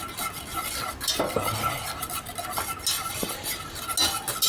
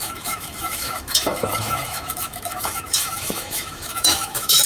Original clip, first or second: first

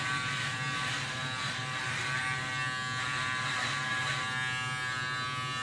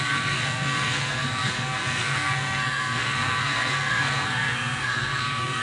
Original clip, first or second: first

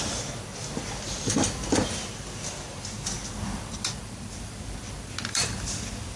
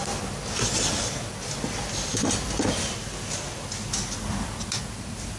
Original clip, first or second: second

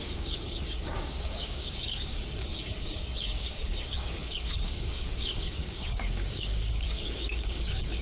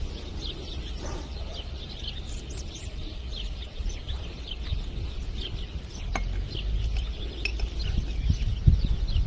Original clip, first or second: second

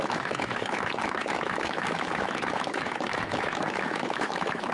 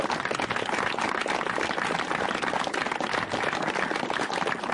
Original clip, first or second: second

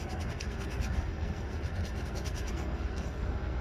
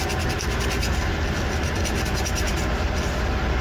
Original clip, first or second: second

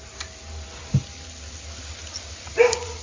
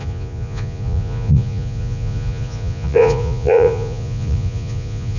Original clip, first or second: first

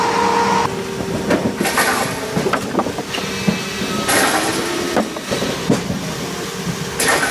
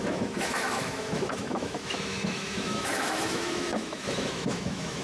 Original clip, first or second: first